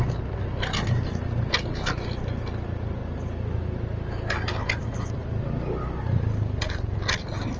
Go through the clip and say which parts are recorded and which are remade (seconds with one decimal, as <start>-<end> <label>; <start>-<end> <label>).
0.0-7.6 recorded